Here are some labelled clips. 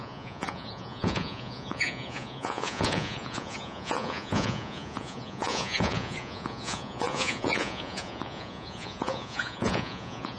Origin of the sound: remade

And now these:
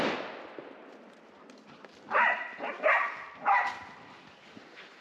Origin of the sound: recorded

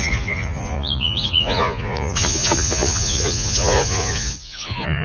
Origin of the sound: remade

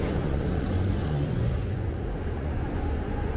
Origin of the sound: remade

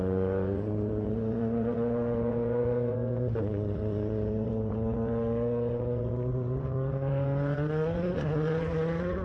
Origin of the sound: remade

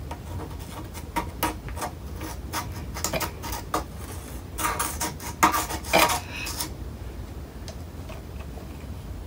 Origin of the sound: recorded